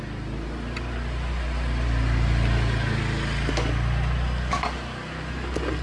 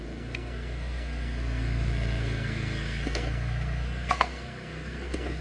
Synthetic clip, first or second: second